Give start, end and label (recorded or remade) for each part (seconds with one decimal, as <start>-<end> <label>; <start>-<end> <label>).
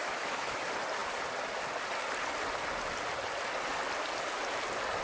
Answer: 0.0-0.6 remade; 0.6-5.0 recorded